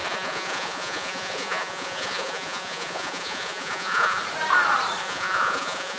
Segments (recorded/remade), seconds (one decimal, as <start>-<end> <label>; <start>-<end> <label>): 0.0-4.2 remade; 4.2-5.0 recorded; 5.0-6.0 remade